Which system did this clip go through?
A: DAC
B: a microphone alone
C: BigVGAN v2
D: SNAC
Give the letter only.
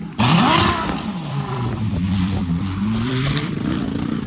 C